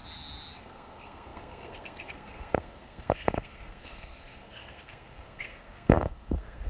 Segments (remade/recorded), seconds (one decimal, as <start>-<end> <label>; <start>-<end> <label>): 0.0-0.6 recorded; 0.6-6.7 remade